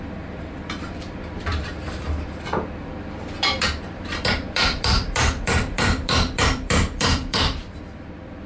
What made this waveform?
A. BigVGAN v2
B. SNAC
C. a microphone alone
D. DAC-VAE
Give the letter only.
A